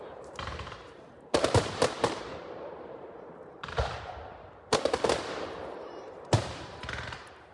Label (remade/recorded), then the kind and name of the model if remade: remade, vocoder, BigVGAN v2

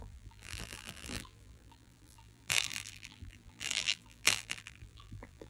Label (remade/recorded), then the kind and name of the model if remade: remade, vocoder, BigVGAN v2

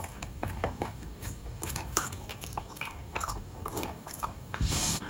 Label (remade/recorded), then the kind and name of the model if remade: remade, codec, DAC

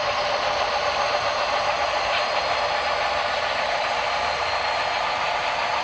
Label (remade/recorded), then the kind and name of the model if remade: remade, vocoder, BigVGAN v2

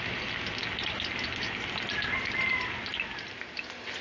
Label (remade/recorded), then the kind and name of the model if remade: recorded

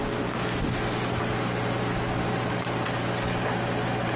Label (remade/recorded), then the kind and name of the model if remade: recorded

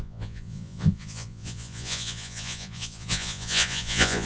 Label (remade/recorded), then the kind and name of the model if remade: remade, vocoder, Vocos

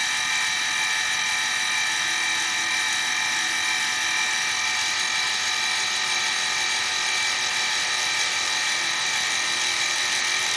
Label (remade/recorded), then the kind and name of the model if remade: recorded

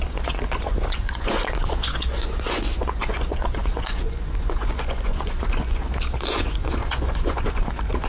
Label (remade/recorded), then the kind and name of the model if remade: remade, vocoder, Vocos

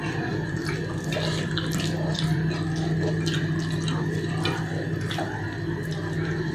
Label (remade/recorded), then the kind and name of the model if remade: recorded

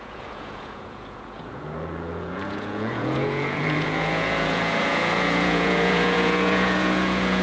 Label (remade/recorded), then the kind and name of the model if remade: remade, vocoder, Vocos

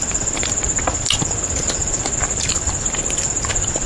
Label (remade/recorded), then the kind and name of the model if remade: recorded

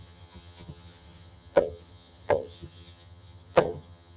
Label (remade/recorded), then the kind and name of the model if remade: remade, vocoder, HiFi-GAN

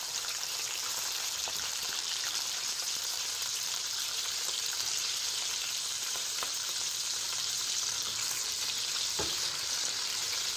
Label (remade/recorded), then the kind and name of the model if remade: remade, vocoder, BigVGAN v2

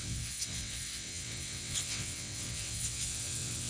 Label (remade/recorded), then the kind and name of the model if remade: remade, vocoder, WaveNeXt